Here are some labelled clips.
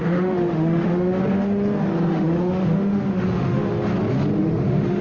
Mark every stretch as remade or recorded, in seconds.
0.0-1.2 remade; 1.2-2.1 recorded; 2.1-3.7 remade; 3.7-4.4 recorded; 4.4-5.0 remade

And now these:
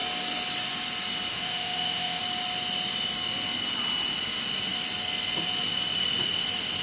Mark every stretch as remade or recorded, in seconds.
0.0-1.3 recorded; 1.3-2.2 remade; 2.2-6.8 recorded

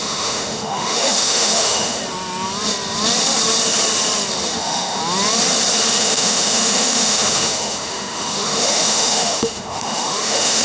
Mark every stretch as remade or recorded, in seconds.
0.0-2.0 remade; 2.0-4.6 recorded; 4.6-5.0 remade; 5.0-6.0 recorded; 6.0-10.6 remade

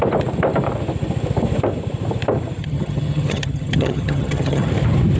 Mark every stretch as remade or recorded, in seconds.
0.0-2.6 recorded; 2.6-4.7 remade; 4.7-5.2 recorded